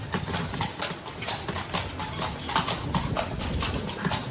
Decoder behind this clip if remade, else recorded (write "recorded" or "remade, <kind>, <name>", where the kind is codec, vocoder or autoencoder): recorded